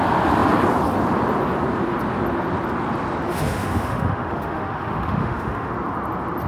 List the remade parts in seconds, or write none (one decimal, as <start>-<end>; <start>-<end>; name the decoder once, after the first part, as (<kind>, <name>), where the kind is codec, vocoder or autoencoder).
3.3-5.7 (autoencoder, DAC-VAE)